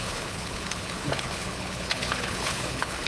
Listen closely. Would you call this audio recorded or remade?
remade